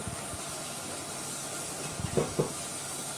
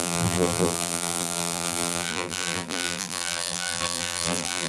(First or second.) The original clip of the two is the first